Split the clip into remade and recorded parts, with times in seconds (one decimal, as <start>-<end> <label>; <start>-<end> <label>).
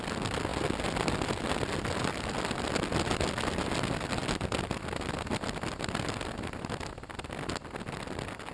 0.0-8.5 recorded